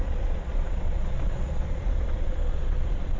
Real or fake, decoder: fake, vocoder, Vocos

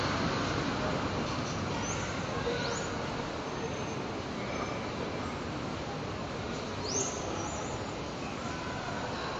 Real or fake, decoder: real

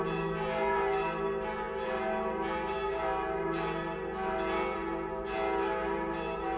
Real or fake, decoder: real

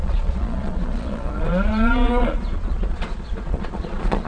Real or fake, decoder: fake, vocoder, Vocos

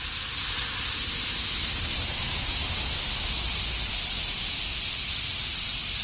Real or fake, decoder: real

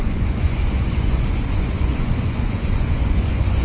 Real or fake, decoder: fake, vocoder, Vocos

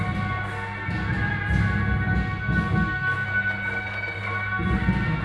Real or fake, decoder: real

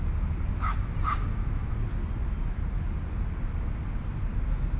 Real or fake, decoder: real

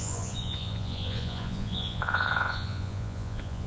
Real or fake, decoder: fake, vocoder, Vocos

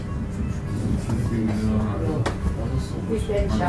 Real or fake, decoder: real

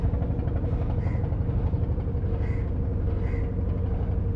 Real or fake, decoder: real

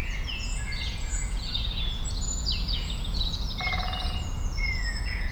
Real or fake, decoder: fake, vocoder, Vocos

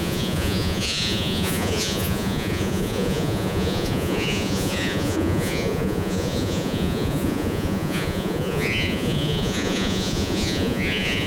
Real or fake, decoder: fake, vocoder, Vocos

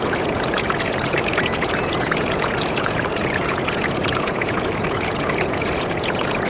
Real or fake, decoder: fake, vocoder, Vocos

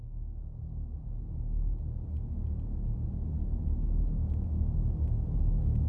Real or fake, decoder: real